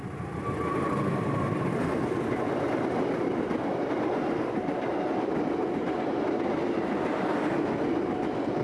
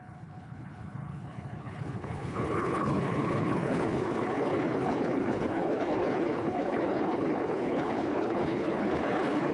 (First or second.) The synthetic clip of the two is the second